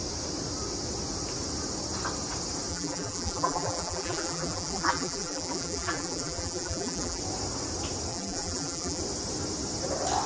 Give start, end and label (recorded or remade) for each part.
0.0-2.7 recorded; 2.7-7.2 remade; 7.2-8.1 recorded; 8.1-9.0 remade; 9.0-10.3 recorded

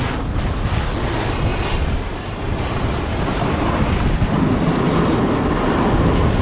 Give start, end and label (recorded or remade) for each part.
0.0-1.5 recorded; 1.5-2.6 remade; 2.6-3.1 recorded; 3.1-3.7 remade; 3.7-6.4 recorded

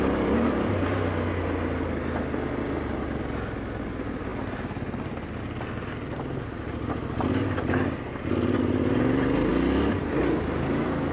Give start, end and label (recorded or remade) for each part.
0.0-11.1 recorded